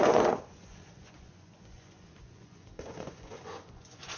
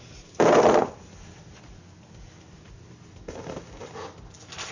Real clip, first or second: second